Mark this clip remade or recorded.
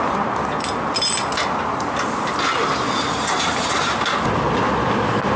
recorded